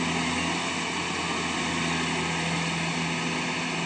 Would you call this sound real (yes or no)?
yes